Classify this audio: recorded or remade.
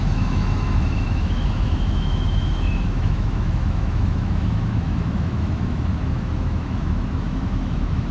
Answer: remade